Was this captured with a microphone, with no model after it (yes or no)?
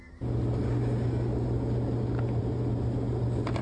yes